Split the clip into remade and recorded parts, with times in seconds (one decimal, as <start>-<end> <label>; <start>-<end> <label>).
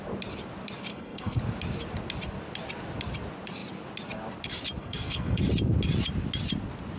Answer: 0.0-0.9 recorded; 0.9-1.4 remade; 1.4-4.8 recorded; 4.8-5.4 remade; 5.4-7.0 recorded